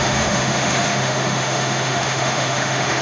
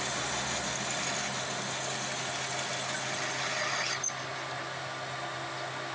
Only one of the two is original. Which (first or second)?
second